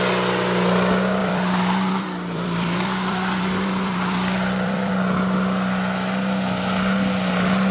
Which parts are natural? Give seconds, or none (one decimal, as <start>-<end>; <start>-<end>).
0.0-1.2; 4.9-7.7